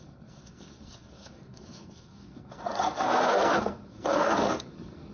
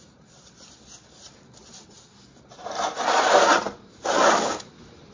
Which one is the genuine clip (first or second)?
second